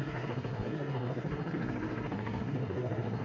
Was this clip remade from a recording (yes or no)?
yes